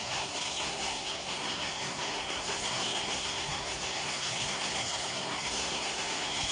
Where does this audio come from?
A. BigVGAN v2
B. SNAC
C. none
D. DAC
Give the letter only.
B